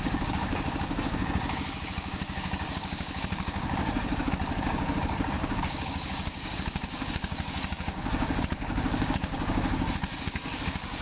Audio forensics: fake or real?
fake